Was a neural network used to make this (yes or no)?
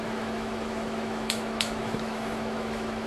yes